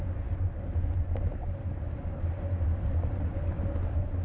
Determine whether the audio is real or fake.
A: real